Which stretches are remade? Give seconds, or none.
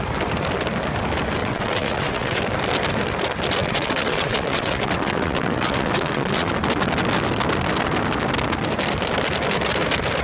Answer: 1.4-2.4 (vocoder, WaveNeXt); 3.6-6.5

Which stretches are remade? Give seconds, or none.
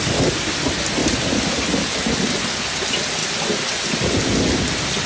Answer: none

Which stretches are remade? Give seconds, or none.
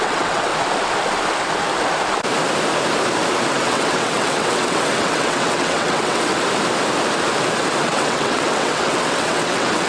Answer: 0.0-0.5 (vocoder, WaveNeXt); 3.5-6.3; 7.8-9.9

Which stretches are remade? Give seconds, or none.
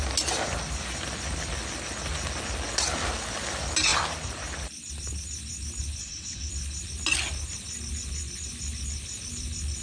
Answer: 6.0-6.5 (vocoder, WaveNeXt)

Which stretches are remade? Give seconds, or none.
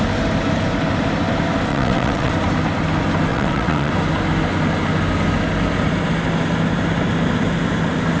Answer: 1.7-2.3 (vocoder, WaveNeXt); 3.3-3.9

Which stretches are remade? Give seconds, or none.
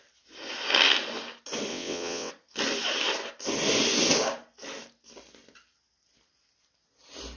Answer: 1.7-2.3 (vocoder, WaveNeXt)